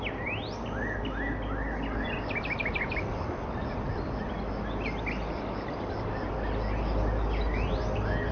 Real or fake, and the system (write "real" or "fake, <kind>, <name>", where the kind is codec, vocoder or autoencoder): real